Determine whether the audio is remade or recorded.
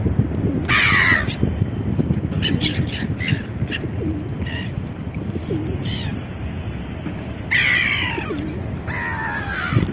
recorded